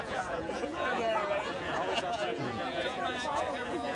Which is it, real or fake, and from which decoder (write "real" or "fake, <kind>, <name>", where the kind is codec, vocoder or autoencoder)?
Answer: fake, vocoder, Vocos